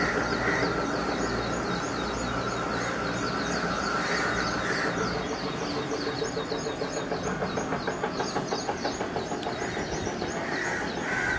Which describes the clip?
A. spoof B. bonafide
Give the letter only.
B